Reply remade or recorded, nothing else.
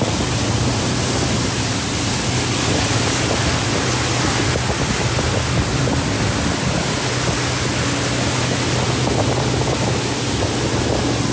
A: recorded